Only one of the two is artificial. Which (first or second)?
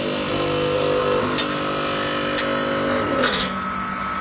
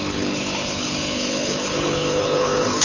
second